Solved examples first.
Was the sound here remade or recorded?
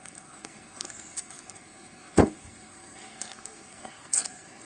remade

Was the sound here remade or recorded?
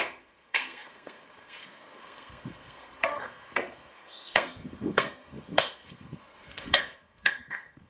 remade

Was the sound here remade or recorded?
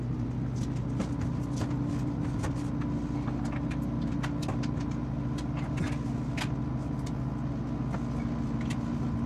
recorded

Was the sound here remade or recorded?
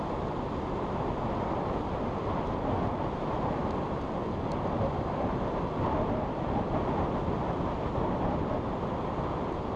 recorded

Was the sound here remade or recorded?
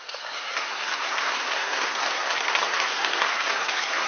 remade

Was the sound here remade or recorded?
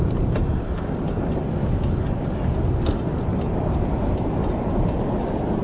recorded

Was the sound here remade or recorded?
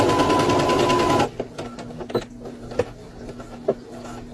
recorded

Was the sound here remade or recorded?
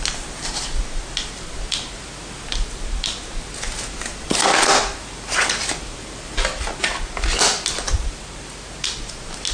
recorded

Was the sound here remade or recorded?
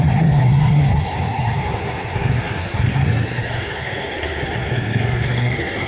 remade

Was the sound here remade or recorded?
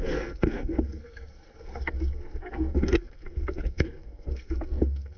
remade